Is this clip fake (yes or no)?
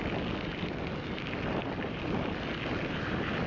no